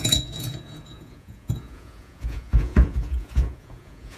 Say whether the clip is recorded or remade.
remade